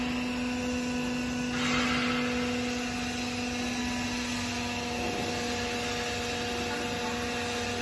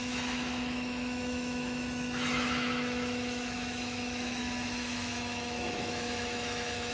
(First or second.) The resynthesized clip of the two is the second